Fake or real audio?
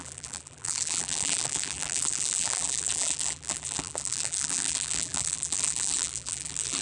fake